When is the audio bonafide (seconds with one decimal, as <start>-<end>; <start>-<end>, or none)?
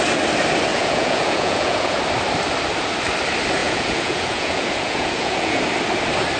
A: 0.0-0.7; 2.0-3.6; 5.6-6.4